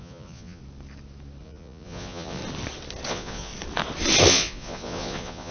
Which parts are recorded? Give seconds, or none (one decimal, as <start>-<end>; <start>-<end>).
0.6-1.4; 2.4-3.1; 3.5-4.3